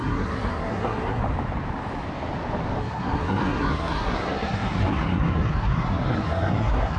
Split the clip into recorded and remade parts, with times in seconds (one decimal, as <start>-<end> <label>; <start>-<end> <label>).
0.0-1.2 remade; 1.2-2.8 recorded; 2.8-7.0 remade